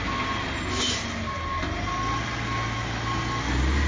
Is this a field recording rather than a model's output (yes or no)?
yes